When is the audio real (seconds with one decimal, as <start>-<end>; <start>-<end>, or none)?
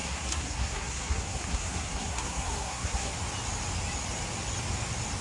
3.1-5.2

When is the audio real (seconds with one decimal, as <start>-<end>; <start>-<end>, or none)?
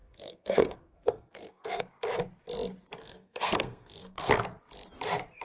1.8-3.0; 4.4-5.4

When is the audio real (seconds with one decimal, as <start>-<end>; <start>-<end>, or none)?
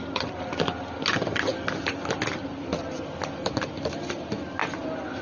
0.0-5.2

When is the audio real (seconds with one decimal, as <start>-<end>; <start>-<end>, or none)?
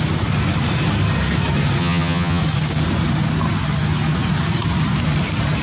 0.0-1.8; 2.4-5.6